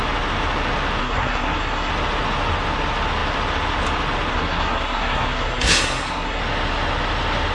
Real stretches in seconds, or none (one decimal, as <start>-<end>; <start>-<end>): 0.0-1.0; 1.9-4.3; 6.4-7.5